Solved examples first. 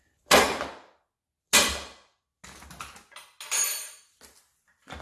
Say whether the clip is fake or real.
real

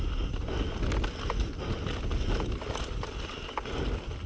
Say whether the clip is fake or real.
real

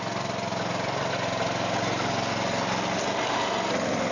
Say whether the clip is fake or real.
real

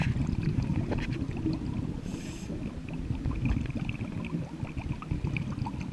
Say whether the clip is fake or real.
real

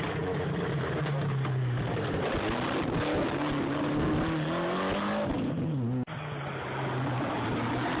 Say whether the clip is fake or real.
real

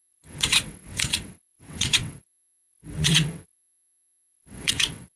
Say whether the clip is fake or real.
fake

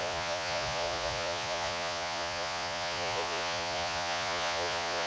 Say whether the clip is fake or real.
fake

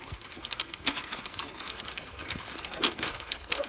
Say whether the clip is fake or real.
fake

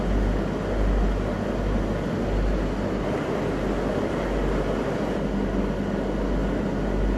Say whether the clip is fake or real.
real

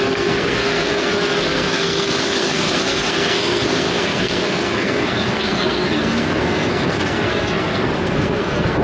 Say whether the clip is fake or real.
fake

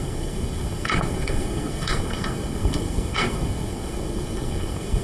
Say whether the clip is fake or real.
fake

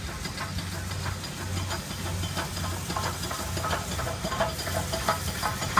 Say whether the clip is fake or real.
real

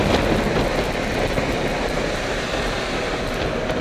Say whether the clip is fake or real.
real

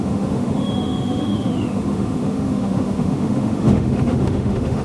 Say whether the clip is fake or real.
fake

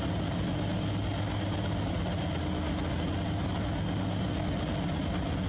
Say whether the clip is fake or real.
real